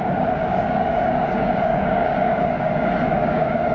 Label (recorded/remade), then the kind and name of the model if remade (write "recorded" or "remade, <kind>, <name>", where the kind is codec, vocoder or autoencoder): remade, codec, DAC